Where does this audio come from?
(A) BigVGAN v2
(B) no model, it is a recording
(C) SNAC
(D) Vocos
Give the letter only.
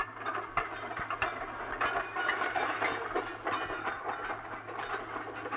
B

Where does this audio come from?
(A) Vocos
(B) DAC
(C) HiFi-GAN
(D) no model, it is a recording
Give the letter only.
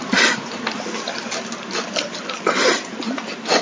D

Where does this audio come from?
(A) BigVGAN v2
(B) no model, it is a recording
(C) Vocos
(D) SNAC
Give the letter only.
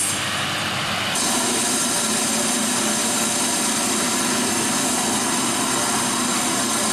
B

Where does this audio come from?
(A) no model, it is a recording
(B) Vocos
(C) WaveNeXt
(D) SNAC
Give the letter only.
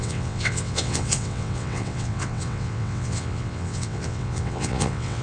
C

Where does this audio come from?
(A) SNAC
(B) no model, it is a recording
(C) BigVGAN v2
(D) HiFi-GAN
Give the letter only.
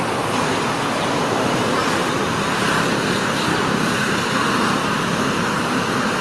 C